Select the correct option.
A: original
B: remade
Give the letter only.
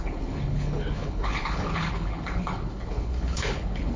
B